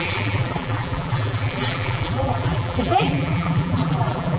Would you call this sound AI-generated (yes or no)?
yes